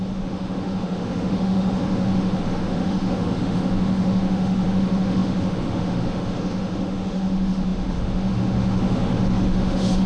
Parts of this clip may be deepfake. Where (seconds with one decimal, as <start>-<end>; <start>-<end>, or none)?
0.0-10.1